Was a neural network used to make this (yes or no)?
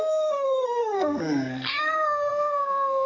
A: yes